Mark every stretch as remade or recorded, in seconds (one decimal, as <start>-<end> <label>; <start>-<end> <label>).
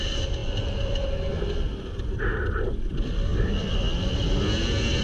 0.0-5.0 recorded